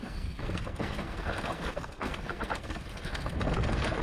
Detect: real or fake fake